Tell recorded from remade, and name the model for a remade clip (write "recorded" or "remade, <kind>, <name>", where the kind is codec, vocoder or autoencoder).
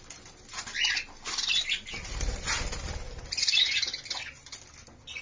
recorded